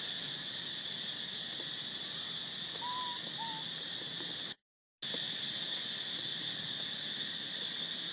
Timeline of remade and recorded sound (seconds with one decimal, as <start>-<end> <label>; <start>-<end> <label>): 0.0-8.1 recorded